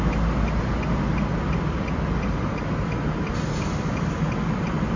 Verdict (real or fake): real